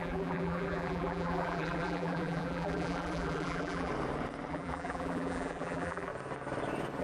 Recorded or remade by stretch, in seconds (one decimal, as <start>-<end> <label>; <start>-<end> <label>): 0.0-3.9 remade; 3.9-4.5 recorded; 4.5-6.1 remade; 6.1-7.0 recorded